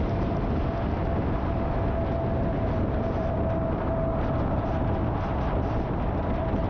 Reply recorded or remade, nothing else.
recorded